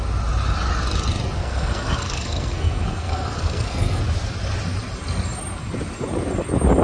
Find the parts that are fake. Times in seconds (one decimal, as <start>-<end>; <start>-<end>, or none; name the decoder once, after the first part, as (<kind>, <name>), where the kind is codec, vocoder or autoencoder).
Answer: 1.4-4.0 (codec, SNAC)